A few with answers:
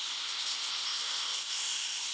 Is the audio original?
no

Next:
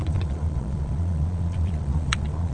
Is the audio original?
no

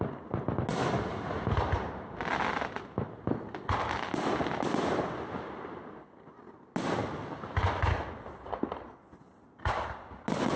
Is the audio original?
yes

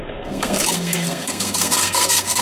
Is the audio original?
no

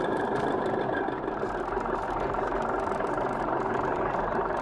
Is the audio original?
yes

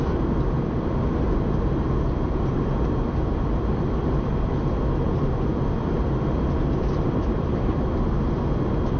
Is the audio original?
no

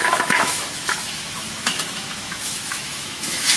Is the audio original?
no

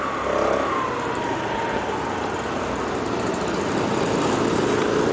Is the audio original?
yes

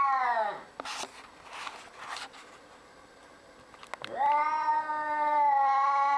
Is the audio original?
yes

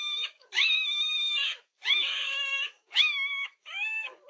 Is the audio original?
no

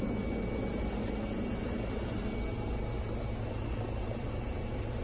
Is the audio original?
yes